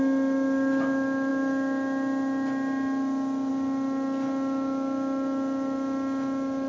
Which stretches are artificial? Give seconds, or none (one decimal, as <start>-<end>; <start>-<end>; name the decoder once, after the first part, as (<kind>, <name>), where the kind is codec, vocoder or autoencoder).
none